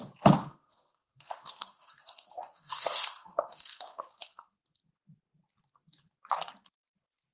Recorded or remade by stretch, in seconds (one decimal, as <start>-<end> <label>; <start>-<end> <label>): 0.0-0.4 recorded; 0.4-4.8 remade; 4.8-7.3 recorded